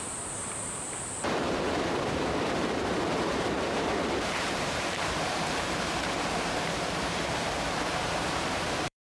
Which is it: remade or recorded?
remade